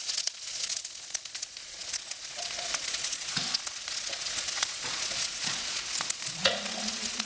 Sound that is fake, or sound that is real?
fake